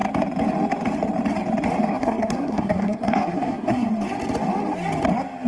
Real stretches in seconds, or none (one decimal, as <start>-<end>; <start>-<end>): 0.0-1.9; 3.9-5.5